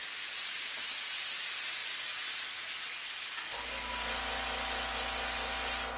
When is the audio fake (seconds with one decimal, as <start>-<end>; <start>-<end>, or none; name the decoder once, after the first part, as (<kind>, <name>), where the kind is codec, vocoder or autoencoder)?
none

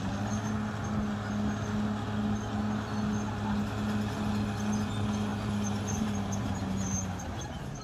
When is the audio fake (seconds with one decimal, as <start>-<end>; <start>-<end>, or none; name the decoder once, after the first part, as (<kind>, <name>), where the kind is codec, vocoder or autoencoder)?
5.3-7.8 (vocoder, BigVGAN v2)

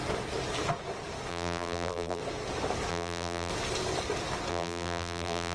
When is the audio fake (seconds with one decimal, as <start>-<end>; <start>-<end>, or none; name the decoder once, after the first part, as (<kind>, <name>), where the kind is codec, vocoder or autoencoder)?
1.3-2.2 (vocoder, BigVGAN v2); 2.9-3.5; 4.5-5.5

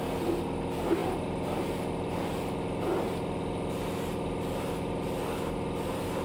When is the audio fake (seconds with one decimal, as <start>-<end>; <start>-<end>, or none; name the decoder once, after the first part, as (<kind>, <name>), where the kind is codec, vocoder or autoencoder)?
none

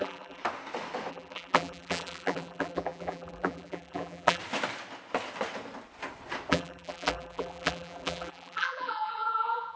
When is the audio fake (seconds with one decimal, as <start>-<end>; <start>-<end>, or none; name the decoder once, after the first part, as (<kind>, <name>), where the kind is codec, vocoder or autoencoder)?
0.0-0.4 (vocoder, BigVGAN v2); 1.1-4.4; 6.5-9.8